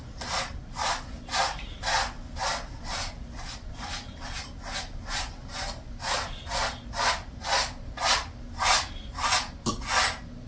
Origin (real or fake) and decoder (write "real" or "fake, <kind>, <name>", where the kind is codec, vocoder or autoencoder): real